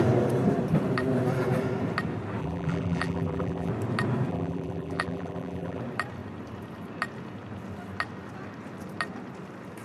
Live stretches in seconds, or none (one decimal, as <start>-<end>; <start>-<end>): 0.0-2.4; 3.7-4.3; 5.8-9.8